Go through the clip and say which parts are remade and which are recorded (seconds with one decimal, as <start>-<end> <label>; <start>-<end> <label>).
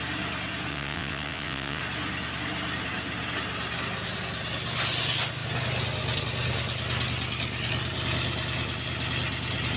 0.0-0.7 recorded; 0.7-1.8 remade; 1.8-9.8 recorded